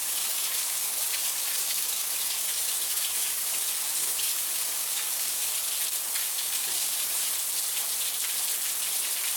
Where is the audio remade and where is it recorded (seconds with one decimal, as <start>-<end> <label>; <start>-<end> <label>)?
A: 0.0-3.6 remade; 3.6-4.0 recorded; 4.0-5.5 remade; 5.5-6.2 recorded; 6.2-7.3 remade; 7.3-9.4 recorded